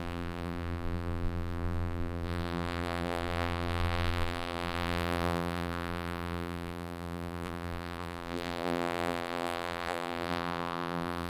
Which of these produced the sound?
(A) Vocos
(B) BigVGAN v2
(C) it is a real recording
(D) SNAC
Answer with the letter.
B